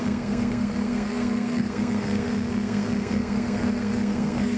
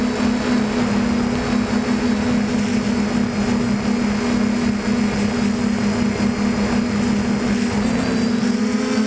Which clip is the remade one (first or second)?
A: first